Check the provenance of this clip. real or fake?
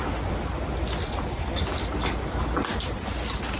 real